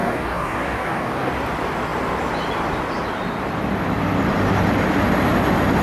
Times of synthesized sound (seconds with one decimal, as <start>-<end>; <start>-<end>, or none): 0.0-1.3